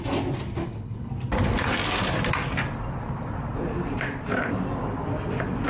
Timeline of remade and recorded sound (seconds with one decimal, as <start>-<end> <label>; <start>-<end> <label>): 0.0-0.6 recorded; 0.6-1.1 remade; 1.1-5.7 recorded